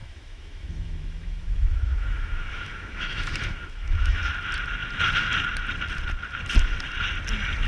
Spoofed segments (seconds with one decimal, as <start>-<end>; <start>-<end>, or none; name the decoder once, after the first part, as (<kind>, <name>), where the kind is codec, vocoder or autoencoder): 0.0-4.2 (autoencoder, DAC-VAE)